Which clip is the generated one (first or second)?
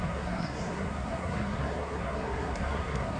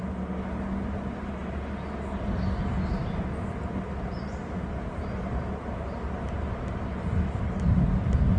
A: first